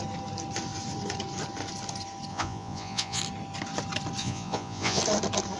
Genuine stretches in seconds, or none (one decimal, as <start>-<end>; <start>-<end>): 0.0-2.3; 3.2-4.2; 5.0-5.6